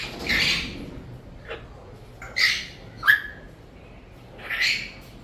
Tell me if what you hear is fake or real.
real